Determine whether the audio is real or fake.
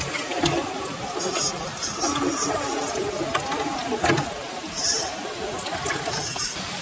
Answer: real